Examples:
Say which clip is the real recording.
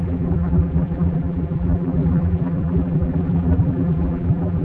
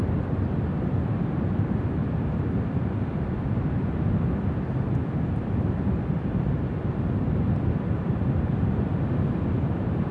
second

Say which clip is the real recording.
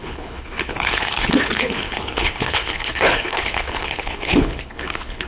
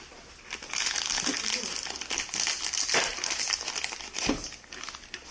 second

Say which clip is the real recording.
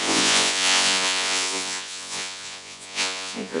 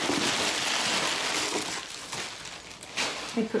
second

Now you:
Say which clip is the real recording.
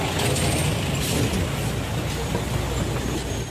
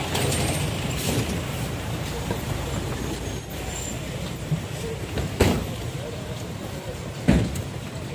first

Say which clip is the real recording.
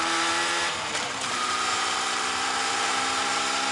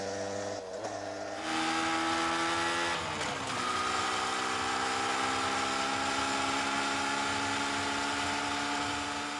second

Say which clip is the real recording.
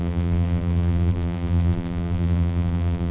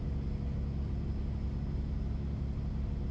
second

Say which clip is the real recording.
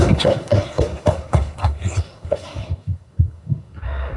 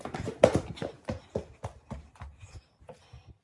second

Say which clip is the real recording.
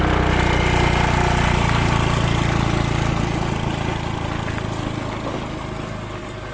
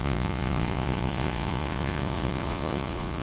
first